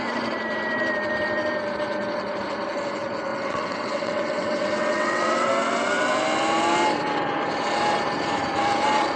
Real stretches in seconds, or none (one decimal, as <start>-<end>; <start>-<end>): 0.0-3.3; 5.5-9.2